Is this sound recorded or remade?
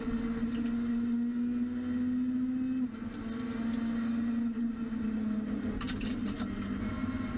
recorded